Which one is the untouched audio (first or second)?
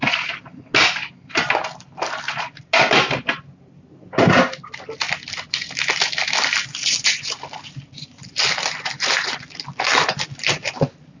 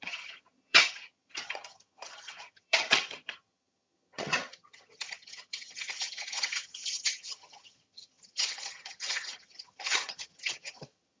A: first